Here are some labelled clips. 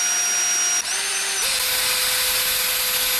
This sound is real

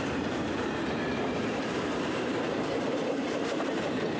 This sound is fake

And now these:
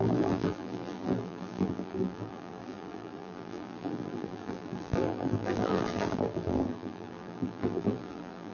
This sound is fake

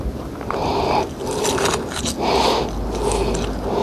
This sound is real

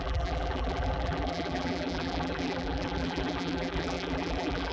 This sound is fake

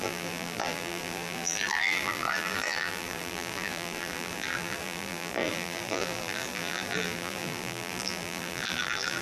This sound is fake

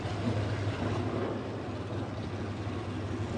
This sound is fake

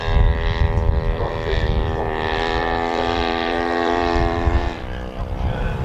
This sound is fake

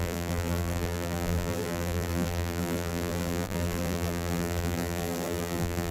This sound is fake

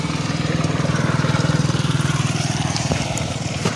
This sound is fake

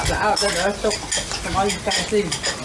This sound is real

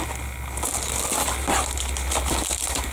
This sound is real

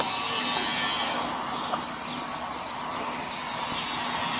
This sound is real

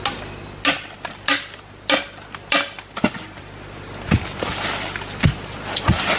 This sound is real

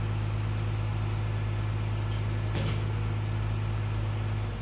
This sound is real